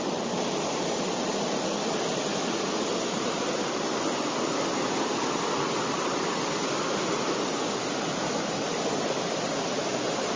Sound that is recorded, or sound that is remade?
recorded